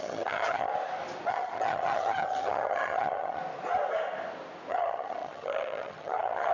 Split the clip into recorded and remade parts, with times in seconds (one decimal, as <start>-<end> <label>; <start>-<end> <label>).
0.0-0.7 remade; 0.7-1.3 recorded; 1.3-3.4 remade; 3.4-4.7 recorded; 4.7-6.5 remade